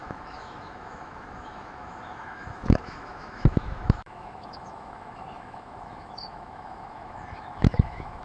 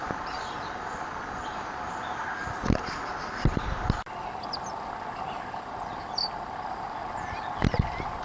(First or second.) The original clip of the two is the second